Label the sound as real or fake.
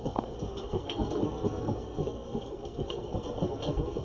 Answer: fake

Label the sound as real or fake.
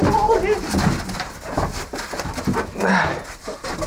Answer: real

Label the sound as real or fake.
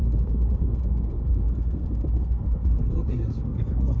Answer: fake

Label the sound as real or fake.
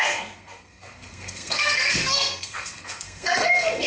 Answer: fake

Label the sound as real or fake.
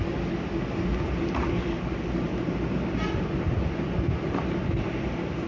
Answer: real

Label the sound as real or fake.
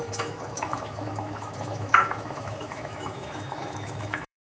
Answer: fake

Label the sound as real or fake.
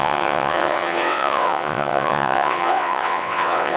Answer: fake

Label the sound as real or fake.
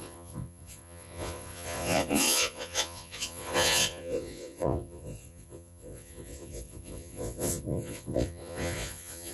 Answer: fake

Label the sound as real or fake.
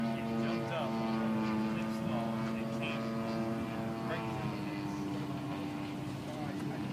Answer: real